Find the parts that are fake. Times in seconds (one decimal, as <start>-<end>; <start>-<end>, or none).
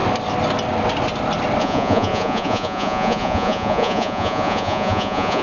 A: 1.6-5.4